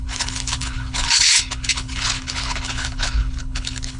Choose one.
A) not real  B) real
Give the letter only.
A